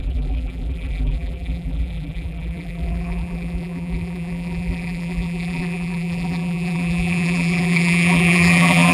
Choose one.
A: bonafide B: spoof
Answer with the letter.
B